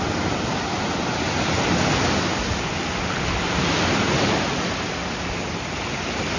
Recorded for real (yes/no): yes